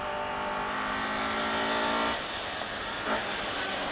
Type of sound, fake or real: real